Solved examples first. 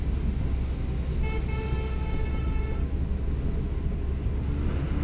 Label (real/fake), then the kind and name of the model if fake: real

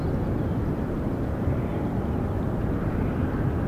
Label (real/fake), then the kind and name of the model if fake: real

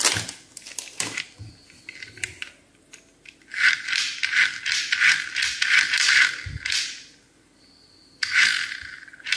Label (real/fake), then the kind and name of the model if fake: real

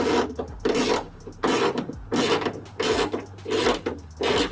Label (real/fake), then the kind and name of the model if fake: real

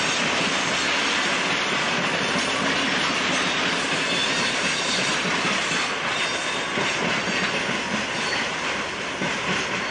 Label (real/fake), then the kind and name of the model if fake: real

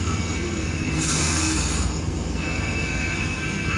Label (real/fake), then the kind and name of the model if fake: fake, codec, SNAC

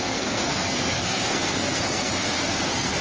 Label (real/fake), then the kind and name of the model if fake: fake, codec, SNAC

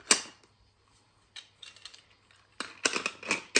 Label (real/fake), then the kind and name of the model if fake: real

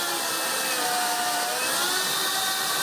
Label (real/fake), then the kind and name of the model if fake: fake, vocoder, BigVGAN v2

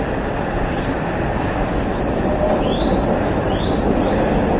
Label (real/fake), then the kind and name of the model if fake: real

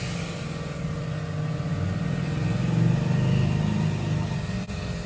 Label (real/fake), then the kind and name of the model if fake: real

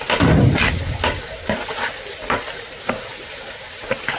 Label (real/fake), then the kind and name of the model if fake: real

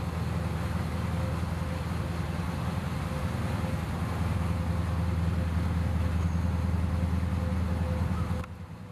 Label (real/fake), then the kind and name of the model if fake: real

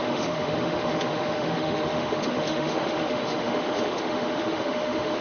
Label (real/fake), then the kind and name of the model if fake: fake, autoencoder, DAC-VAE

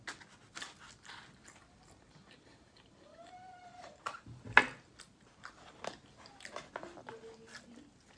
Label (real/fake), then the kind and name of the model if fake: real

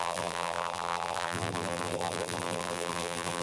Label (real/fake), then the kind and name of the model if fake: fake, vocoder, BigVGAN v2